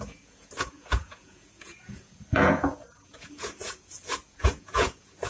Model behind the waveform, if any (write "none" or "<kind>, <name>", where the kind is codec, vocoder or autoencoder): vocoder, Vocos